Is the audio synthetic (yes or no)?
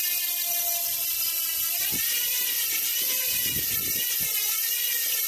no